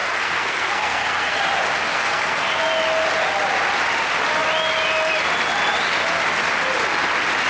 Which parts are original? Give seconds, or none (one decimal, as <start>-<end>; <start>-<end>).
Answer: 1.4-1.9; 2.6-7.5